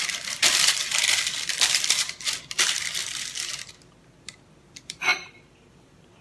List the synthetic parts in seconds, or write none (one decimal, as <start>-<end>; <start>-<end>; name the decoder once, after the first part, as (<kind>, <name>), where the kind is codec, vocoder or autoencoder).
0.0-3.0 (vocoder, BigVGAN v2); 3.7-6.2